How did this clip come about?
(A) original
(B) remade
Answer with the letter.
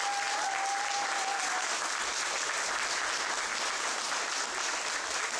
A